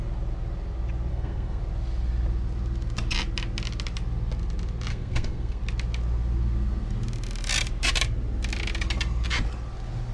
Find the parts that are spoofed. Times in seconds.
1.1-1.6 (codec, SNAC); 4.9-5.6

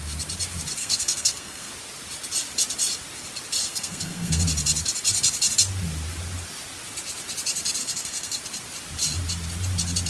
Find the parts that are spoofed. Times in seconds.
0.8-1.7 (codec, SNAC); 3.6-4.4; 7.8-8.4

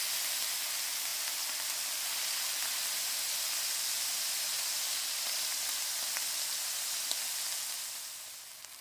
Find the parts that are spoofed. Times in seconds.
none